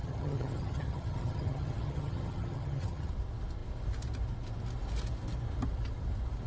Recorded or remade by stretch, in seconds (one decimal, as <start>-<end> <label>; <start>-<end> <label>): 0.0-3.1 remade; 3.1-6.5 recorded